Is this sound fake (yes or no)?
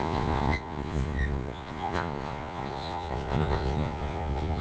yes